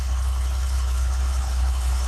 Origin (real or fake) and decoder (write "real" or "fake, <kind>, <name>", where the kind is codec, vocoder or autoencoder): fake, codec, HILCodec